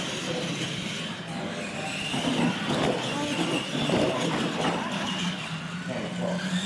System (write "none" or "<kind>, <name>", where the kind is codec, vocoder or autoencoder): none